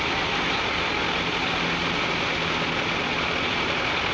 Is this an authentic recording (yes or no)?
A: yes